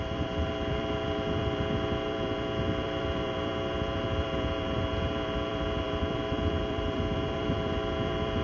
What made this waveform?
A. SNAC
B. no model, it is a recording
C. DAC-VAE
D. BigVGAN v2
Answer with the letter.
D